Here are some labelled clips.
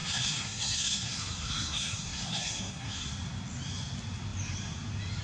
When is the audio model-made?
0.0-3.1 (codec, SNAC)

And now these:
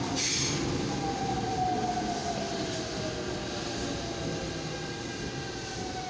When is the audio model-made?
none